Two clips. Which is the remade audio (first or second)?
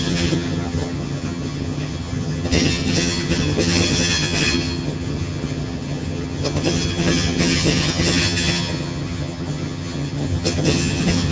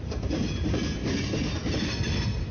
first